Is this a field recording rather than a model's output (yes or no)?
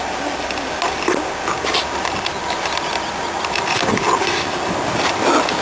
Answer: yes